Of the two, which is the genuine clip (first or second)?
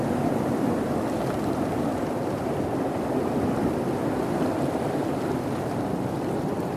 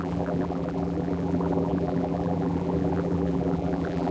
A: first